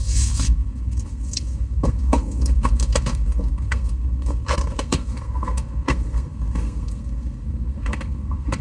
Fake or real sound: fake